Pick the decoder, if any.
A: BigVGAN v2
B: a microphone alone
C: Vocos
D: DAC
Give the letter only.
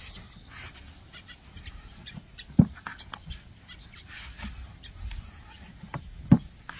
B